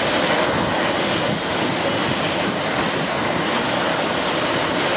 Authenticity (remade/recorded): recorded